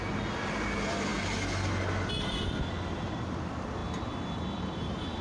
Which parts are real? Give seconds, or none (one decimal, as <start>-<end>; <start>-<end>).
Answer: 0.0-5.2